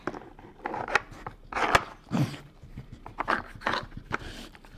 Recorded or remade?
recorded